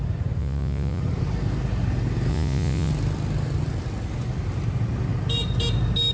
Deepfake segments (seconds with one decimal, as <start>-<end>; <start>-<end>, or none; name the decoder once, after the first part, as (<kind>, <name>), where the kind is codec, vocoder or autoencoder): 0.4-1.0 (vocoder, Vocos); 2.3-2.9